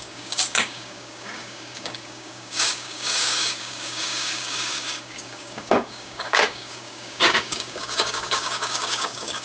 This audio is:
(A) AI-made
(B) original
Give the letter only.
A